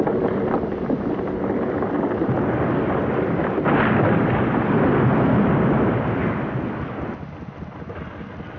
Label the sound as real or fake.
real